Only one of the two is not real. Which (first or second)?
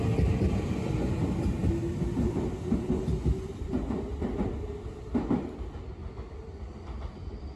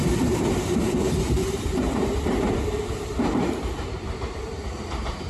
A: second